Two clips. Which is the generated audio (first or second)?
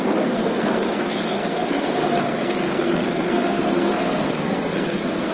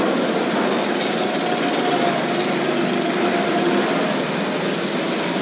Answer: first